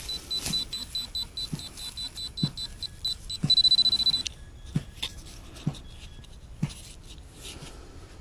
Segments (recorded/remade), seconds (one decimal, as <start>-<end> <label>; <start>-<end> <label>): 0.0-8.2 recorded